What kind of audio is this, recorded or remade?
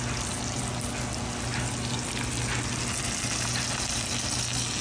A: recorded